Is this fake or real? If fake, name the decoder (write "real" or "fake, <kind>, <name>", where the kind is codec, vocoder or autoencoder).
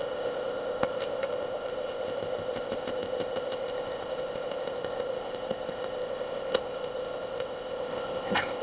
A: fake, codec, ZipCodec